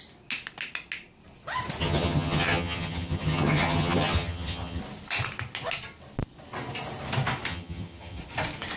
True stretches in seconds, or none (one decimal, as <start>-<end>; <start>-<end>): 0.0-1.8; 4.8-7.5; 8.2-8.8